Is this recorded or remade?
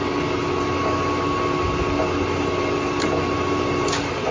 recorded